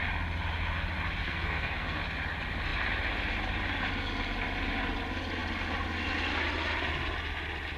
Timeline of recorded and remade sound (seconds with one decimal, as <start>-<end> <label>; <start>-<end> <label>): 0.0-1.2 recorded; 1.2-2.0 remade; 2.0-7.8 recorded